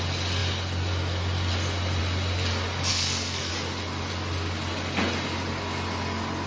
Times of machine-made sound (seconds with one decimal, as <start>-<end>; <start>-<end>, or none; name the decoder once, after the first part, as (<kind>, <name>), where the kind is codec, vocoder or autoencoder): 2.9-3.5 (codec, SNAC)